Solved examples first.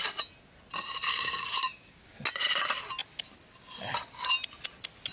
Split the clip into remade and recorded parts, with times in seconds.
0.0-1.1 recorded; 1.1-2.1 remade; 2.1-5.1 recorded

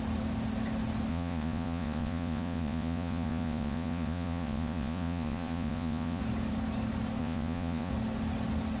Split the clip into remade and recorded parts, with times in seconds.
0.0-1.1 recorded; 1.1-6.2 remade; 6.2-7.2 recorded; 7.2-7.9 remade; 7.9-8.8 recorded

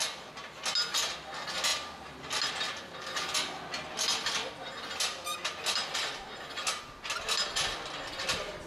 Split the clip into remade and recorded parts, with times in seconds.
0.0-8.7 recorded

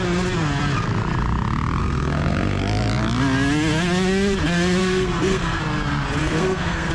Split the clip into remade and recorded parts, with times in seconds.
0.0-1.8 recorded; 1.8-2.6 remade; 2.6-4.8 recorded; 4.8-5.6 remade; 5.6-6.2 recorded; 6.2-6.9 remade

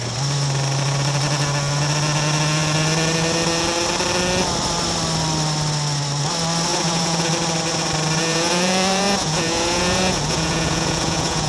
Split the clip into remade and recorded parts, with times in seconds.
0.0-6.7 recorded; 6.7-7.3 remade; 7.3-8.2 recorded; 8.2-11.5 remade

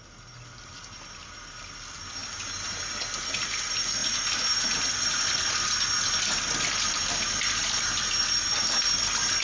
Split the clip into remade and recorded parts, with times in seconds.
0.0-9.4 recorded

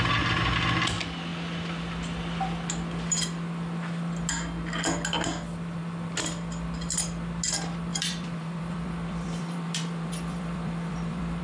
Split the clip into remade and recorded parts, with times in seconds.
0.0-7.9 recorded; 7.9-11.4 remade